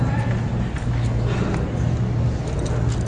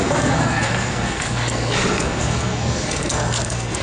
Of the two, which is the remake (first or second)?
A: second